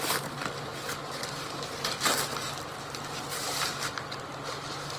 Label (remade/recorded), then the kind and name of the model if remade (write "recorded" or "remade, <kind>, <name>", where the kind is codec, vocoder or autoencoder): recorded